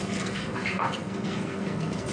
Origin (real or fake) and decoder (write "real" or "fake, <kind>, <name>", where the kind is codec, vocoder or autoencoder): fake, codec, SNAC